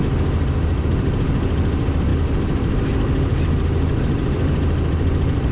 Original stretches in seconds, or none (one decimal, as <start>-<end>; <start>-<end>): 0.0-0.8